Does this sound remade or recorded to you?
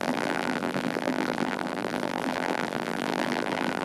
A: remade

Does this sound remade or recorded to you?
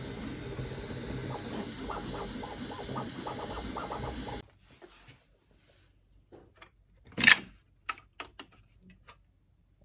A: recorded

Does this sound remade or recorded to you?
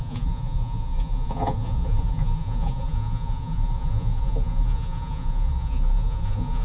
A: remade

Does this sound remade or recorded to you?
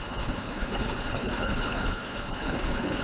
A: remade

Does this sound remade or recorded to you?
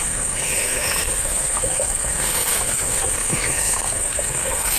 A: remade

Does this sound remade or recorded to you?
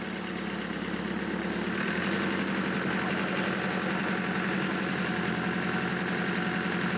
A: recorded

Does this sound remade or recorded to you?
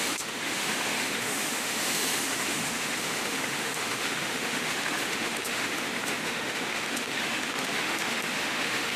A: remade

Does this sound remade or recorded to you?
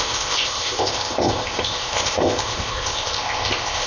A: remade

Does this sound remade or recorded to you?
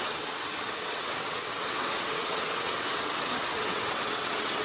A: remade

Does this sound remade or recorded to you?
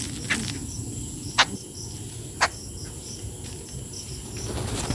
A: recorded